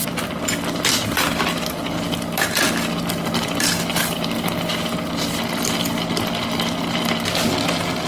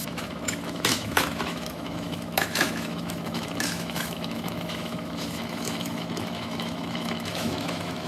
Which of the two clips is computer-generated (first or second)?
second